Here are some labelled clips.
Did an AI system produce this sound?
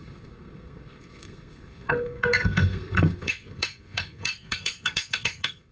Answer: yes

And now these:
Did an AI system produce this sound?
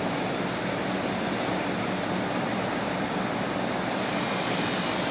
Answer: no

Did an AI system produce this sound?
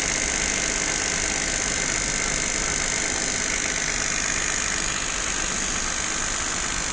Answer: no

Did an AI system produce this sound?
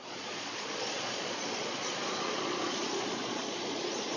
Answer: yes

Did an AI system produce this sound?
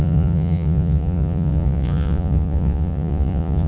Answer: yes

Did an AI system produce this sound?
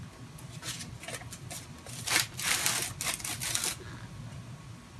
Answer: no